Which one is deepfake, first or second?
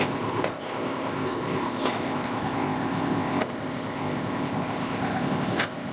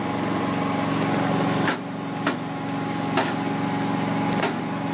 first